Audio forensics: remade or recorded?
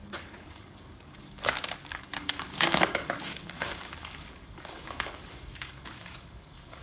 remade